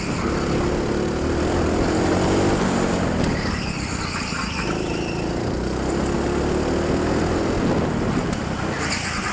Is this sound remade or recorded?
recorded